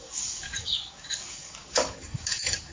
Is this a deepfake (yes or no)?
yes